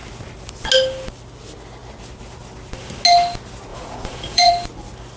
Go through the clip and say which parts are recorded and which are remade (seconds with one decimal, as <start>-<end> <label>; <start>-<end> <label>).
0.0-3.7 recorded; 3.7-4.5 remade; 4.5-5.2 recorded